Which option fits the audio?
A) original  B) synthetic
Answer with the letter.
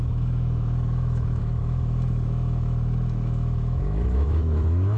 B